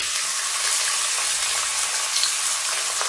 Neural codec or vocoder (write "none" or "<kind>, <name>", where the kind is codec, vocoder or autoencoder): none